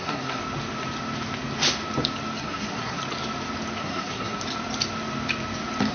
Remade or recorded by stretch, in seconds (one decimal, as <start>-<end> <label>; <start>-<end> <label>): 0.0-0.4 remade; 0.4-2.4 recorded; 2.4-3.0 remade; 3.0-3.8 recorded; 3.8-4.4 remade; 4.4-5.9 recorded